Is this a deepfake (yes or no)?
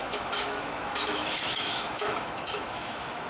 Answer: yes